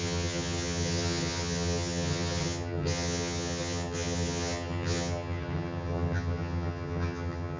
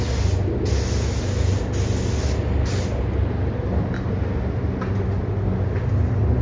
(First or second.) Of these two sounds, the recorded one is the second